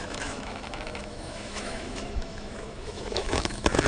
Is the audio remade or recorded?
remade